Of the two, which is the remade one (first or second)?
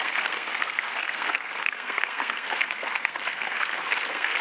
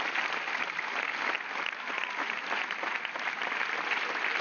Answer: first